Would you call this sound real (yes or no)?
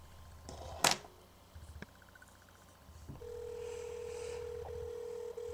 yes